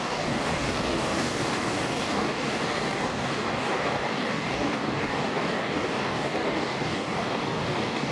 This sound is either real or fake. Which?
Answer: fake